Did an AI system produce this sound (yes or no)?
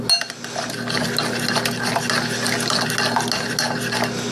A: no